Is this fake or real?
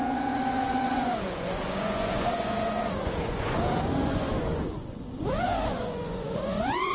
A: fake